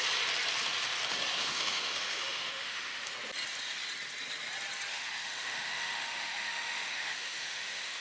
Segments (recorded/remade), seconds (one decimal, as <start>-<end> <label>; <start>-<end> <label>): 0.0-1.4 recorded; 1.4-3.1 remade; 3.1-4.9 recorded; 4.9-8.0 remade